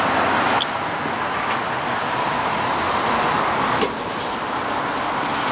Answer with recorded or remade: recorded